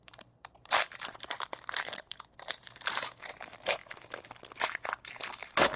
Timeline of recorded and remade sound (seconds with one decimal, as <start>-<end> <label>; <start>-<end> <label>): 0.0-3.8 remade; 3.8-5.8 recorded